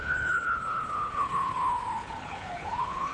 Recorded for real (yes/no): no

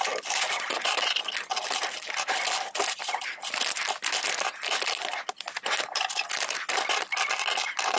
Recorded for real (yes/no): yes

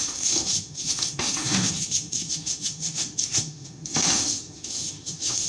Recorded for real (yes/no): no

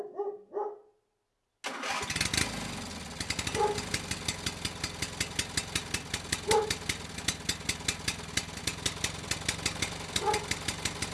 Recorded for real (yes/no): yes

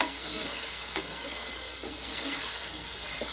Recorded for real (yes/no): no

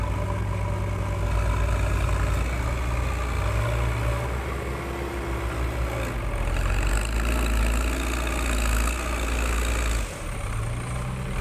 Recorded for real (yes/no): yes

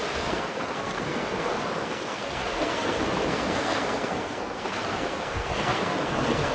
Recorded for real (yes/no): no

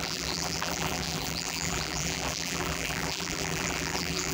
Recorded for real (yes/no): no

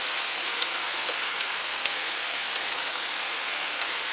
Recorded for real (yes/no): no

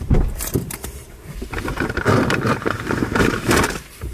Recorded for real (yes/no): no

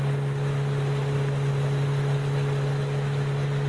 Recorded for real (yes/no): yes